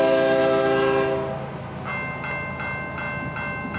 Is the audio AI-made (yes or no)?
no